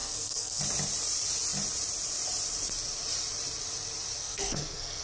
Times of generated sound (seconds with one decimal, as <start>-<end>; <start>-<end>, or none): 0.0-0.6; 4.2-5.0